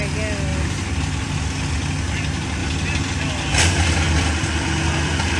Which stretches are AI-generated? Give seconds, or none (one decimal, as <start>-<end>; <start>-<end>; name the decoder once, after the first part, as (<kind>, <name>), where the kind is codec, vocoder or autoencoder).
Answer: none